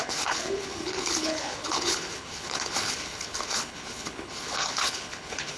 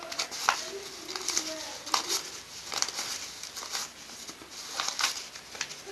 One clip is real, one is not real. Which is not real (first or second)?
first